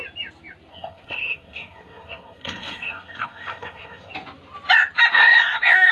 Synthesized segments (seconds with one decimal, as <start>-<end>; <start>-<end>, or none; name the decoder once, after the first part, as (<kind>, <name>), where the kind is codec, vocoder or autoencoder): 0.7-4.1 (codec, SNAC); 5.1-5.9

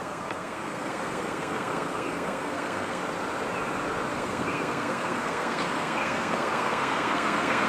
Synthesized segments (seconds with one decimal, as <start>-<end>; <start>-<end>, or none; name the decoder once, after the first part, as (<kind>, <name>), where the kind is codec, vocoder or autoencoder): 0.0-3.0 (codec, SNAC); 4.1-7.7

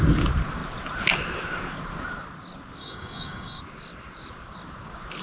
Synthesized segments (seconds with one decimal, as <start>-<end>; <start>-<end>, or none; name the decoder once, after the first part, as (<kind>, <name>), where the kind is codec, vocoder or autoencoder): 2.8-3.6 (codec, DAC)